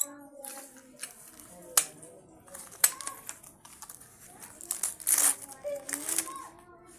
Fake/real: real